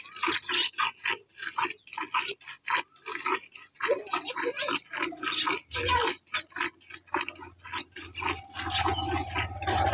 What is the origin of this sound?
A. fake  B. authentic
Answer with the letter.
B